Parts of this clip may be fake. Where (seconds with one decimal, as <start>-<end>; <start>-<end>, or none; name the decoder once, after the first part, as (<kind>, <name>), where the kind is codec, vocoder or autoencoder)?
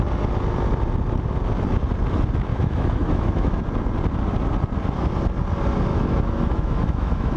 2.5-3.6 (autoencoder, DAC-VAE); 5.9-7.4